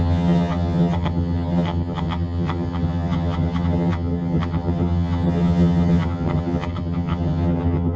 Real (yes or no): no